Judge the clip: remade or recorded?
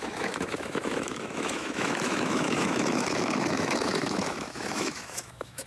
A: remade